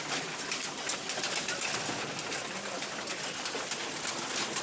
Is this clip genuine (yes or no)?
yes